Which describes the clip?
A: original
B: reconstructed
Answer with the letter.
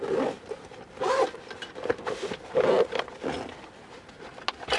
A